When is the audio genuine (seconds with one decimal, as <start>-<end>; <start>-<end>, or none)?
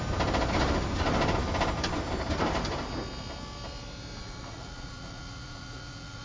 0.0-4.2